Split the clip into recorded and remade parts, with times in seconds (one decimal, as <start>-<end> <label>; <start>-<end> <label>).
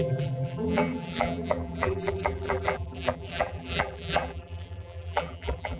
0.0-5.8 remade